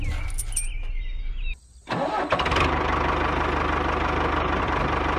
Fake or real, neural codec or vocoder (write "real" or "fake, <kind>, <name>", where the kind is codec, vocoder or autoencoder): real